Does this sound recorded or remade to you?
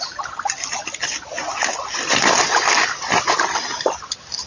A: recorded